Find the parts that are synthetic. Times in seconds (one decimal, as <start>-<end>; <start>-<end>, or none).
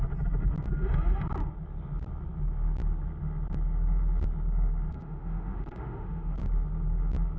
4.9-6.4